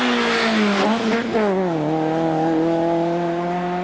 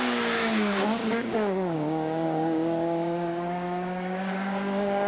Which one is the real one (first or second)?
first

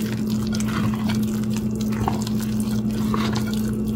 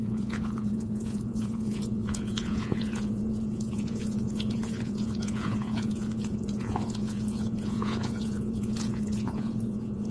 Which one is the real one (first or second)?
first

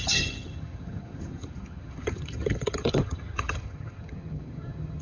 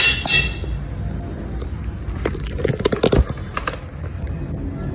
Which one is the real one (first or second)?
second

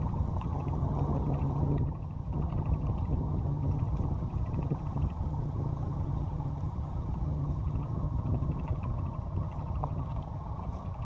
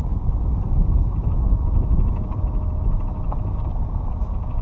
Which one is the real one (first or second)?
second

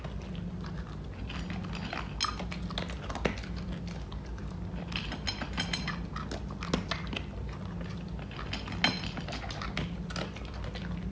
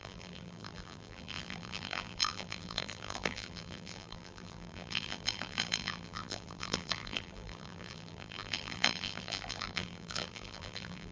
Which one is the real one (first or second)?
first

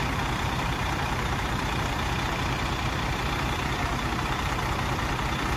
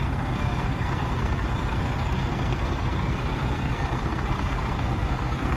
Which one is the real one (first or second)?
first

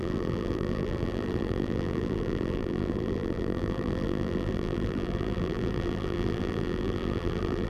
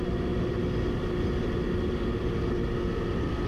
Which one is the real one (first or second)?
second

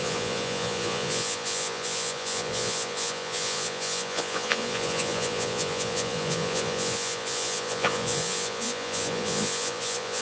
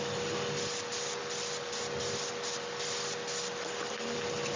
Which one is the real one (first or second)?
second